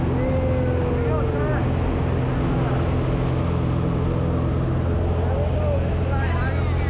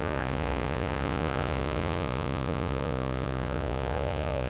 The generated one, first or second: second